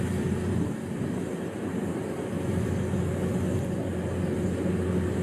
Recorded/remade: recorded